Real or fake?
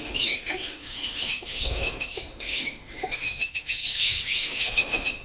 fake